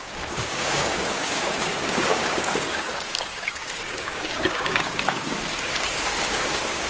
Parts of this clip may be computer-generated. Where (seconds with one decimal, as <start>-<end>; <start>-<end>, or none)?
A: 0.0-6.9